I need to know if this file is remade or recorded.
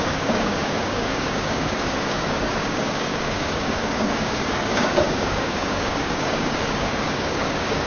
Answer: remade